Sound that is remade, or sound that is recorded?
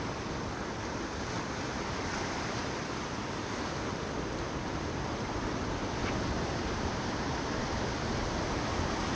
remade